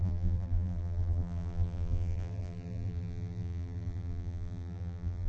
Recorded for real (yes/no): no